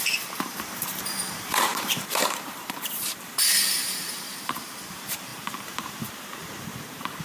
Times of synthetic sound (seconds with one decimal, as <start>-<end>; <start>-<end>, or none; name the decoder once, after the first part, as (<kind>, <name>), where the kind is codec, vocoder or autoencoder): 0.0-7.2 (vocoder, BigVGAN v2)